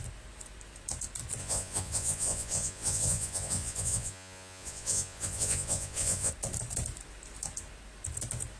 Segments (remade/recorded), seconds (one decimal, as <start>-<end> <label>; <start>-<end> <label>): 0.0-1.4 recorded; 1.4-6.3 remade; 6.3-8.6 recorded